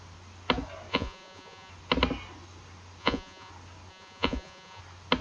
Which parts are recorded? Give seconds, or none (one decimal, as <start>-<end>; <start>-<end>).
0.0-0.9; 1.7-3.0; 3.5-3.9; 4.8-5.2